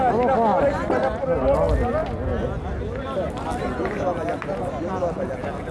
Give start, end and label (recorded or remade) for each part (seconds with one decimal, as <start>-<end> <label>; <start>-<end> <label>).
0.0-5.7 recorded